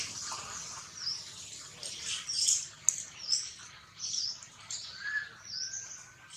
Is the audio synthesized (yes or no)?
no